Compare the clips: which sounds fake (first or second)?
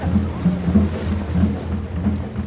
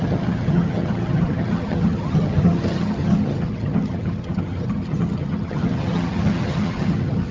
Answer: second